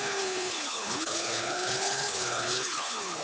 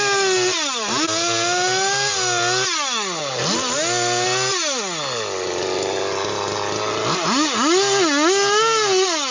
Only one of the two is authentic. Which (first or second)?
second